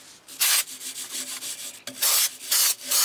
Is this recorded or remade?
recorded